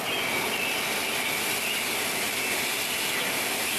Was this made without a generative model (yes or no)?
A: yes